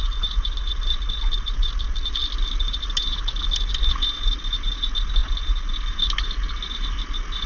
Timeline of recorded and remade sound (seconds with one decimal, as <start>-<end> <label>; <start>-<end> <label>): 0.0-7.5 recorded